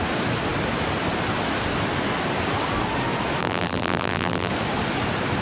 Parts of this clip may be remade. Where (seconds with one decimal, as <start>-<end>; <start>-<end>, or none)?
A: 3.4-4.5